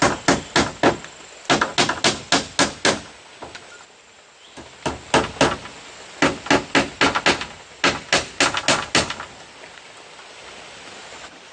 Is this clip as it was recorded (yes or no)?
yes